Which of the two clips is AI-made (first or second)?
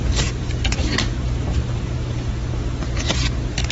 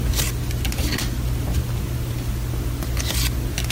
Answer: first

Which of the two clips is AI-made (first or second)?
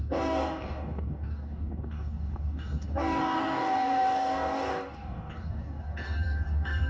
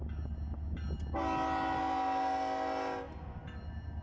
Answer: first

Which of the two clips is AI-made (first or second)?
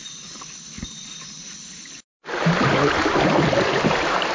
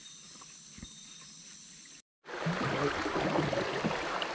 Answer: first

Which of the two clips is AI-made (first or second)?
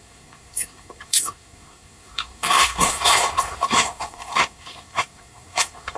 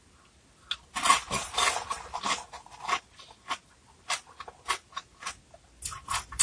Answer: first